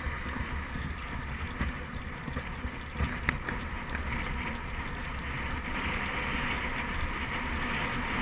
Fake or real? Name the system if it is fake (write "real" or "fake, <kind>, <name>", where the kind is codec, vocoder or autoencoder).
real